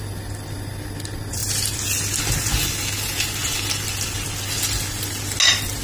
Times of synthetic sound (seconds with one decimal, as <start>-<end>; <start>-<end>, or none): none